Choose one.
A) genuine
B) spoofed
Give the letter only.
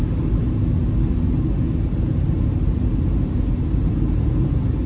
A